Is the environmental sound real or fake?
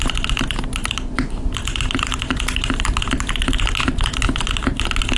real